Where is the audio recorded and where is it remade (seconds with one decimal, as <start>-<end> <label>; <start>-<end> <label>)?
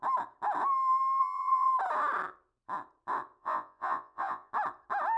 0.0-1.2 recorded; 1.2-1.7 remade; 1.7-3.4 recorded; 3.4-4.5 remade; 4.5-5.2 recorded